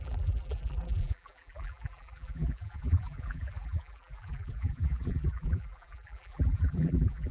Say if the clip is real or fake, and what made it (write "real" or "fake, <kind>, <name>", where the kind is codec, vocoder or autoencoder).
fake, vocoder, BigVGAN v2